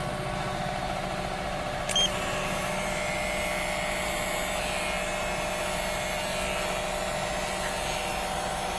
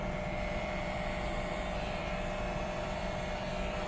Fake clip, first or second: second